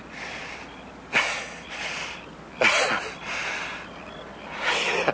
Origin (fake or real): real